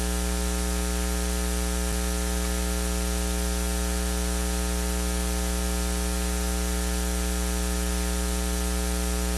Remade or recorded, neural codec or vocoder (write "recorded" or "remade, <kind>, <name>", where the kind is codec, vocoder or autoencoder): recorded